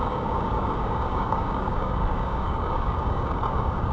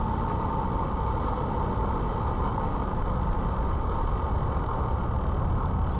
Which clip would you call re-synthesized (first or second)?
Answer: first